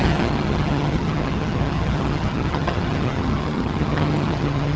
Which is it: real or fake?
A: fake